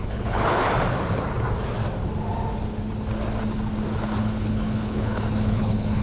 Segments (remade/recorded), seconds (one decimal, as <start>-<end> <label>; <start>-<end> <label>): 0.0-0.6 remade; 0.6-4.2 recorded; 4.2-6.0 remade